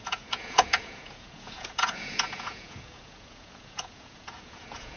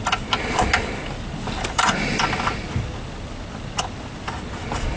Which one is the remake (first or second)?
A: first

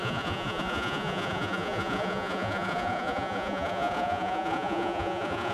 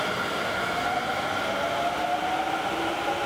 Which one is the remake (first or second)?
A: first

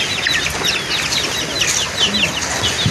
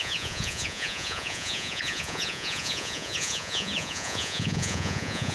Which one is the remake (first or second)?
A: second